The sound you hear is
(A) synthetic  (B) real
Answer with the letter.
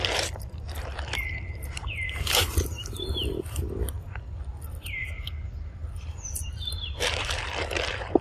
A